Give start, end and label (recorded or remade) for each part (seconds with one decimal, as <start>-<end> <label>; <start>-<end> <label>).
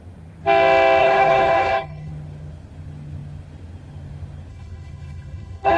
0.0-1.0 recorded; 1.0-2.1 remade; 2.1-4.5 recorded; 4.5-5.8 remade